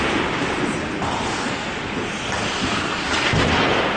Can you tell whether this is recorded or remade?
recorded